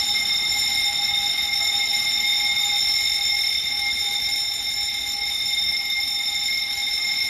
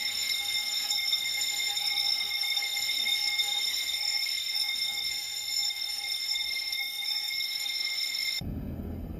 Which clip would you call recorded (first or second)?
first